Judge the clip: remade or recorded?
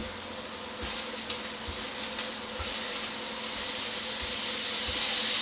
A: recorded